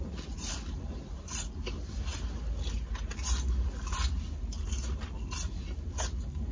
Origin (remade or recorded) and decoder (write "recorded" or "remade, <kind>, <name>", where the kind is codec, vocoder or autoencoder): recorded